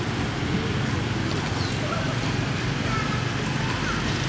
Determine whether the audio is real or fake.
real